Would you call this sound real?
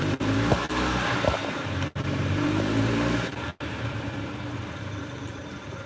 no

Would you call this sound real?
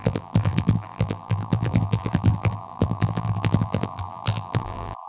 no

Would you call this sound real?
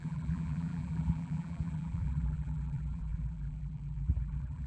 no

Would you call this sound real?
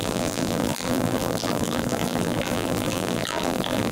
no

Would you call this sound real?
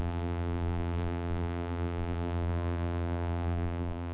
no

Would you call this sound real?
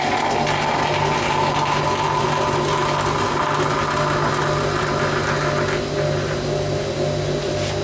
yes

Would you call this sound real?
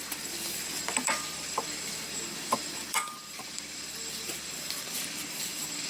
no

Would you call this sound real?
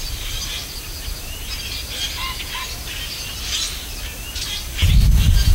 yes